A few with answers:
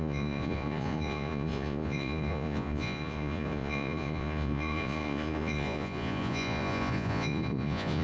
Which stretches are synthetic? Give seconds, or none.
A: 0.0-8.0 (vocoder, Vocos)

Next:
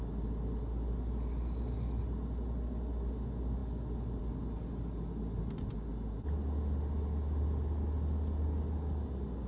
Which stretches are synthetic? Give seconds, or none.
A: none